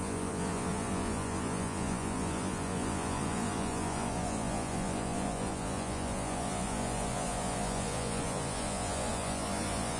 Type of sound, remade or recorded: remade